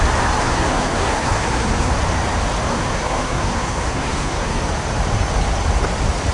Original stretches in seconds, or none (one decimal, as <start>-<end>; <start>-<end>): 0.0-0.4; 1.9-2.7; 4.6-6.3